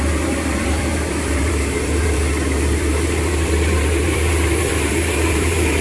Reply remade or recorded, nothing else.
remade